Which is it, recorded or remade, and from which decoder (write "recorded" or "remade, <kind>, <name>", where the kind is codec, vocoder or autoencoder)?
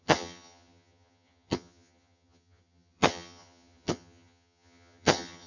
remade, vocoder, HiFi-GAN